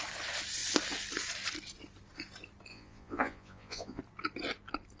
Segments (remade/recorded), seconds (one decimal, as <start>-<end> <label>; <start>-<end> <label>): 0.0-2.7 recorded; 2.7-4.0 remade; 4.0-5.0 recorded